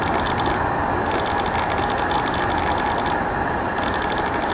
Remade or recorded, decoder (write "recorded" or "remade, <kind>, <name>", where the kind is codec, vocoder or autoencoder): recorded